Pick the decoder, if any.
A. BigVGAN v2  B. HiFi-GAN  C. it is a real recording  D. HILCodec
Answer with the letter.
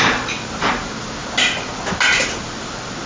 C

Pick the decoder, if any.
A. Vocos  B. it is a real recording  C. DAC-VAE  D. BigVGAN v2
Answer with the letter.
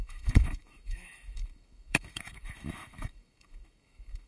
C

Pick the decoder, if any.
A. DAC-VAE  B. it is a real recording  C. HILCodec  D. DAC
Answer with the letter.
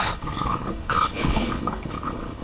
C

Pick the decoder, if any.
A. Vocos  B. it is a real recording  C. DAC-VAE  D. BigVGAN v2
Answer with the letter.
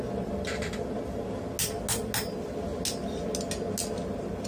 B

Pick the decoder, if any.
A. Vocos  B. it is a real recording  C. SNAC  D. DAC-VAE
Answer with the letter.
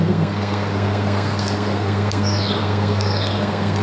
C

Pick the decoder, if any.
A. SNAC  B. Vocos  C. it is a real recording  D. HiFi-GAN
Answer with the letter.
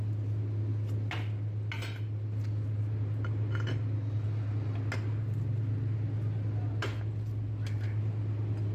C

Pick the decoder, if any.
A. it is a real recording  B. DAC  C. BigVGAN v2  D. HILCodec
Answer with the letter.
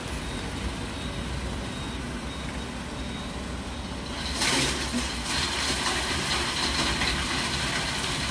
A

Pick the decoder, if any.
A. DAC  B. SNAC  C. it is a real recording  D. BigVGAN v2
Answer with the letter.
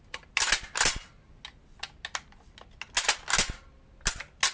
C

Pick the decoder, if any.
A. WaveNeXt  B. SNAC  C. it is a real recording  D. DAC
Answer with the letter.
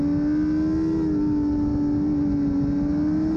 C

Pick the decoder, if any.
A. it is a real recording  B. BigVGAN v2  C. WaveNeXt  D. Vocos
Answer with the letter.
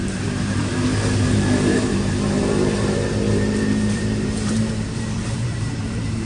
B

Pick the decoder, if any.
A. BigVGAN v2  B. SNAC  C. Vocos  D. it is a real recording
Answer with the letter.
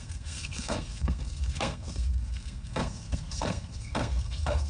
B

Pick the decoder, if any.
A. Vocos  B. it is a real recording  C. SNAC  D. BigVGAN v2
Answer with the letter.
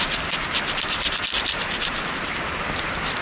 B